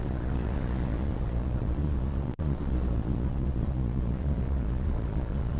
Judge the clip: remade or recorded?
remade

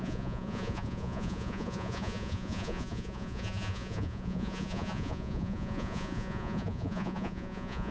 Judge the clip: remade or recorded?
remade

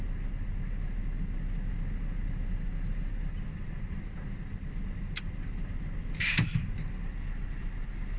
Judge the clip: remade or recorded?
recorded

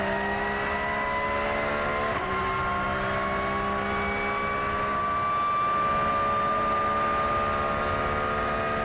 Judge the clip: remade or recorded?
recorded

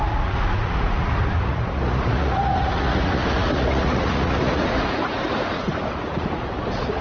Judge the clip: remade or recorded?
remade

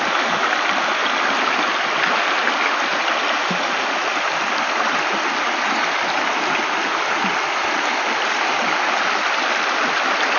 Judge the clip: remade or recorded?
recorded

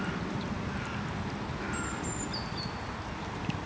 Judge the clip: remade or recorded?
recorded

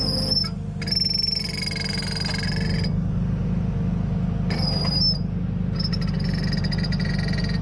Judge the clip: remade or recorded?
recorded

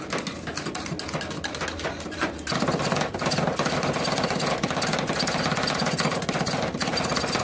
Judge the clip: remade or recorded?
recorded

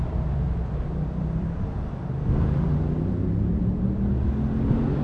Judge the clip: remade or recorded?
recorded